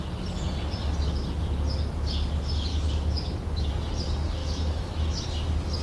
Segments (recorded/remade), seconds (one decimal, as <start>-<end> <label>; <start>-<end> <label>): 0.0-2.7 recorded; 2.7-3.7 remade; 3.7-4.4 recorded; 4.4-5.2 remade; 5.2-5.8 recorded